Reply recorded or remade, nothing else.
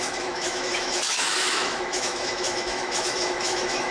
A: remade